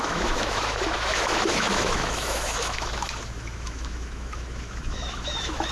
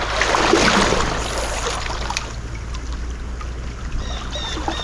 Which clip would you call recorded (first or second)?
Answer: second